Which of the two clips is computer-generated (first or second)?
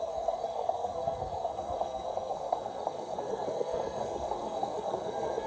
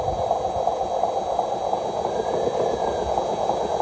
first